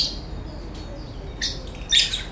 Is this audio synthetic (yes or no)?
no